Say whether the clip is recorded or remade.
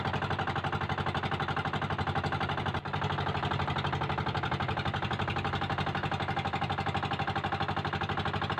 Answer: recorded